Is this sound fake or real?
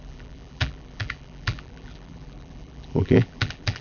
fake